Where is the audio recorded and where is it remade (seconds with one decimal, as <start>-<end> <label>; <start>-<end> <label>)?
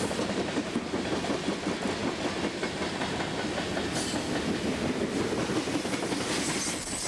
0.0-7.1 recorded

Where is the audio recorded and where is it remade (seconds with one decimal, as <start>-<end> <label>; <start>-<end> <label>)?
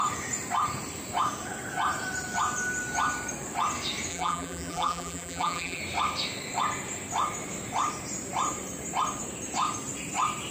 0.0-4.1 recorded; 4.1-5.8 remade; 5.8-10.5 recorded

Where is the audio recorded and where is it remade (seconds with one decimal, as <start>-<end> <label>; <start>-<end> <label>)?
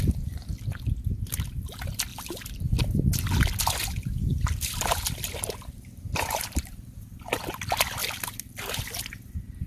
0.0-2.1 recorded; 2.1-2.8 remade; 2.8-4.3 recorded; 4.3-7.5 remade; 7.5-8.0 recorded; 8.0-8.7 remade; 8.7-9.7 recorded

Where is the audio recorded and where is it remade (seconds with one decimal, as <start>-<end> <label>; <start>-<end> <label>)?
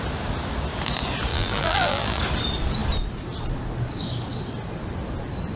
0.0-1.3 recorded; 1.3-2.2 remade; 2.2-5.6 recorded